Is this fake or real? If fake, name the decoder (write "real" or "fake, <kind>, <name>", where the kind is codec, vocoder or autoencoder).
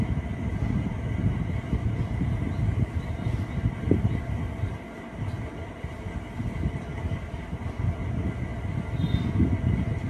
real